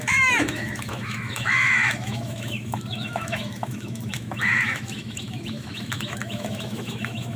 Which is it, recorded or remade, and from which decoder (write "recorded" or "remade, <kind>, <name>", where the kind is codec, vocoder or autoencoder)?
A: remade, autoencoder, DAC-VAE